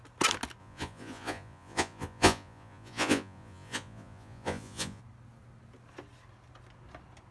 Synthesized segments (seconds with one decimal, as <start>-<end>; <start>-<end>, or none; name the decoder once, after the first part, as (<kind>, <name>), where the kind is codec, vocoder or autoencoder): 0.6-5.0 (vocoder, Vocos)